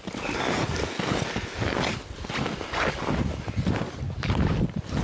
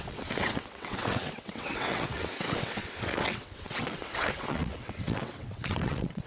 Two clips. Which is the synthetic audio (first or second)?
second